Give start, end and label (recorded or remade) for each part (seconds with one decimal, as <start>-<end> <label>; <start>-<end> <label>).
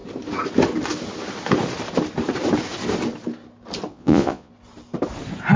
0.0-3.9 recorded; 3.9-4.5 remade; 4.5-5.6 recorded